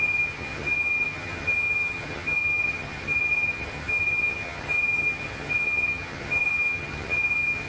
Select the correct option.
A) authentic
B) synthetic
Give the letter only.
B